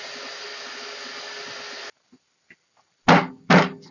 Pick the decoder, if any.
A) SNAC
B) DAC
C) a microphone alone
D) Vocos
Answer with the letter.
C